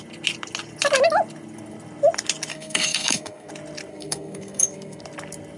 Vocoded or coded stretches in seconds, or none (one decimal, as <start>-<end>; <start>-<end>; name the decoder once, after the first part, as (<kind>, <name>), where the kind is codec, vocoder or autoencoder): 2.5-3.5 (codec, SNAC); 3.9-5.0